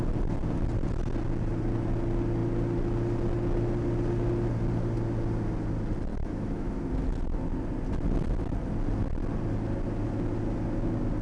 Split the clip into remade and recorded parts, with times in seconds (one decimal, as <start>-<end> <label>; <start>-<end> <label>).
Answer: 0.0-6.1 recorded; 6.1-6.9 remade; 6.9-11.2 recorded